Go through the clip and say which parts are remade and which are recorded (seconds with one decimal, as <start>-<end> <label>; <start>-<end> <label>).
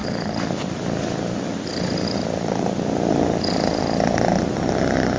0.0-3.1 remade; 3.1-5.2 recorded